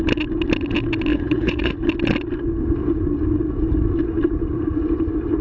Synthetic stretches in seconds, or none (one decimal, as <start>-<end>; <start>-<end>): 1.1-1.8